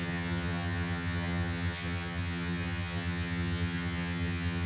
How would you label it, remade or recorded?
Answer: remade